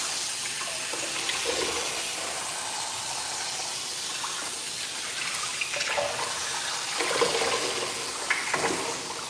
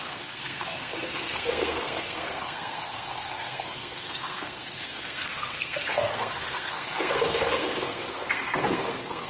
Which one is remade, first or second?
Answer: second